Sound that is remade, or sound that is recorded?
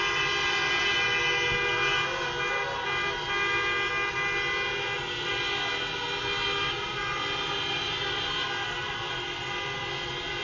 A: recorded